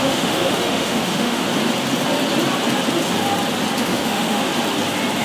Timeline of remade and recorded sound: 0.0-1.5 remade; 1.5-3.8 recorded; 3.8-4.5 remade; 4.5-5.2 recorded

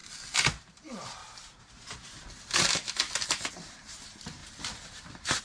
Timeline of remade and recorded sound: 0.0-0.5 recorded; 0.5-1.2 remade; 1.2-3.5 recorded; 3.5-5.4 remade

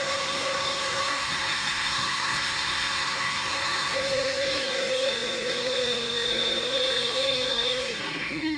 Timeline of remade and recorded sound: 0.0-8.6 remade